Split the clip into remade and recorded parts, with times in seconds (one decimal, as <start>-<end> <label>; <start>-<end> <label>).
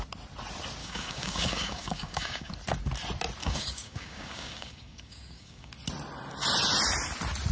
0.0-0.8 recorded; 0.8-2.5 remade; 2.5-3.4 recorded; 3.4-5.7 remade; 5.7-7.5 recorded